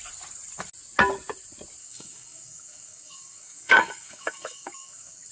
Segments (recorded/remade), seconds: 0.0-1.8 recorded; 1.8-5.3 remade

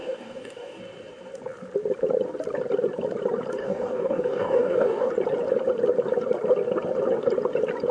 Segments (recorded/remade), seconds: 0.0-0.8 remade; 0.8-3.6 recorded; 3.6-5.1 remade; 5.1-7.9 recorded

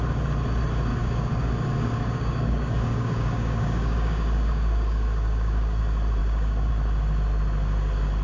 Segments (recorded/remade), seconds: 0.0-0.9 recorded; 0.9-5.8 remade; 5.8-6.2 recorded; 6.2-6.7 remade; 6.7-8.2 recorded

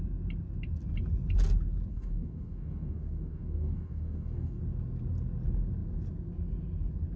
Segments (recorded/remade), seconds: 0.0-1.9 recorded; 1.9-4.6 remade; 4.6-7.2 recorded

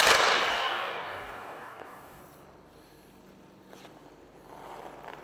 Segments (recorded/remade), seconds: 0.0-0.5 recorded; 0.5-2.2 remade; 2.2-5.2 recorded